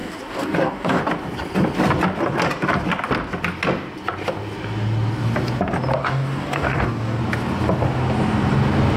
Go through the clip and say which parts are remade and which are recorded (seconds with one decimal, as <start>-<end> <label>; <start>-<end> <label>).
0.0-1.0 remade; 1.0-6.0 recorded; 6.0-7.2 remade; 7.2-9.0 recorded